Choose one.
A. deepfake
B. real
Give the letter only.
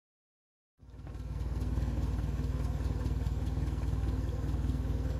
A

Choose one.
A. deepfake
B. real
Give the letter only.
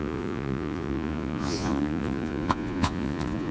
A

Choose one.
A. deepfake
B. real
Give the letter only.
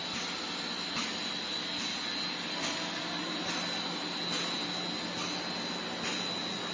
B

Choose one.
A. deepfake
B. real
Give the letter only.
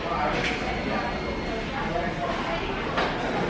B